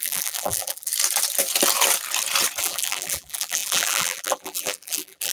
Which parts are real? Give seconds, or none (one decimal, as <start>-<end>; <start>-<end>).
0.9-2.6